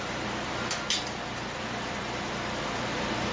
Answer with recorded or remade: recorded